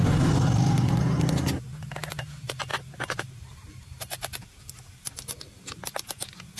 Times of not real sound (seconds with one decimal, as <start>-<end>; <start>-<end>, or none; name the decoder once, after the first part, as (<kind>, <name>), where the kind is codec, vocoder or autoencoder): none